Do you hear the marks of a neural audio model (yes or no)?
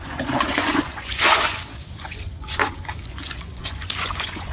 yes